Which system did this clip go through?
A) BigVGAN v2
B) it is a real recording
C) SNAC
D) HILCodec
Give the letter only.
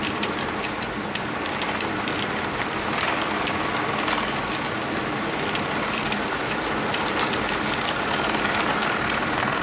B